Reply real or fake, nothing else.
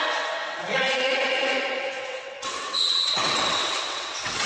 fake